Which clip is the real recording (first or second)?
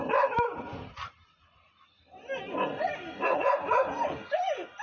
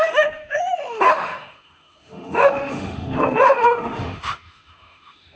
first